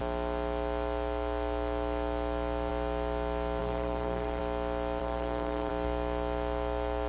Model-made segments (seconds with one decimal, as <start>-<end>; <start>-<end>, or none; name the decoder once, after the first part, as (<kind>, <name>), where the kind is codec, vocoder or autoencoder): 3.6-4.4 (codec, SNAC); 5.0-5.7